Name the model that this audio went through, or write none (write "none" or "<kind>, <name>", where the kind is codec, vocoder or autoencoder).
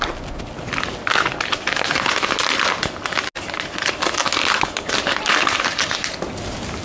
none